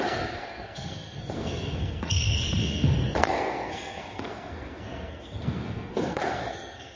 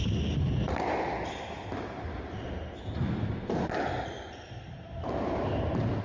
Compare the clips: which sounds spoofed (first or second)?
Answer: first